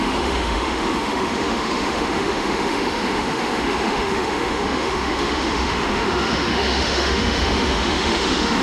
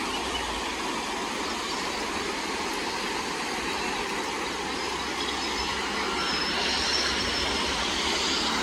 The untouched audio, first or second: second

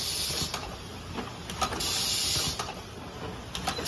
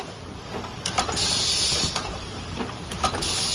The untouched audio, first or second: first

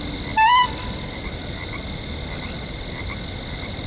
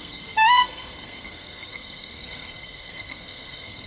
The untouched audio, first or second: first